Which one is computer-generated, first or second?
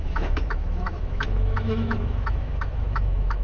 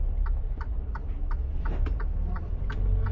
first